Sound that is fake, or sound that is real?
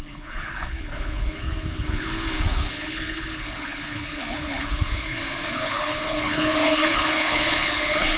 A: fake